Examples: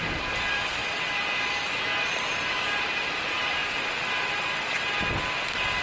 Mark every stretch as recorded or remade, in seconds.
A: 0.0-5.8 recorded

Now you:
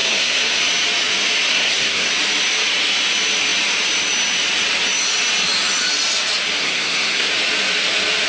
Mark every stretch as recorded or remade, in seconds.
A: 0.0-0.6 remade; 0.6-1.5 recorded; 1.5-2.1 remade; 2.1-6.6 recorded; 6.6-7.3 remade; 7.3-8.3 recorded

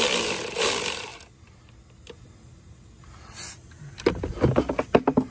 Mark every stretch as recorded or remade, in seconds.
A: 0.0-5.3 recorded

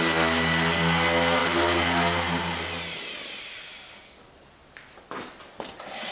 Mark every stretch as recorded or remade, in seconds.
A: 0.0-1.4 recorded; 1.4-3.4 remade; 3.4-6.1 recorded

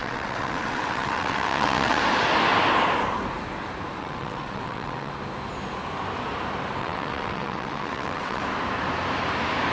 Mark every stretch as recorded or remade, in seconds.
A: 0.0-2.0 remade; 2.0-4.0 recorded; 4.0-5.1 remade; 5.1-6.8 recorded; 6.8-8.4 remade; 8.4-9.7 recorded

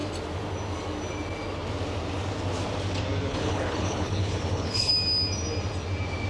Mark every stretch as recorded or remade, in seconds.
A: 0.0-3.3 recorded; 3.3-4.9 remade; 4.9-6.3 recorded

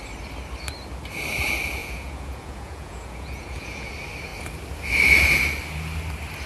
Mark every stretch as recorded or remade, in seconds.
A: 0.0-1.8 recorded; 1.8-3.9 remade; 3.9-6.5 recorded